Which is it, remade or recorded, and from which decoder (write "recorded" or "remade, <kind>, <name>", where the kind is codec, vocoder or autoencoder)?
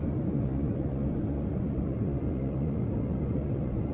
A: remade, vocoder, Vocos